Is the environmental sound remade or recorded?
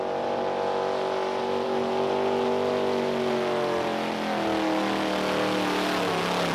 recorded